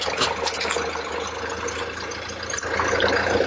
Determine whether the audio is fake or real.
real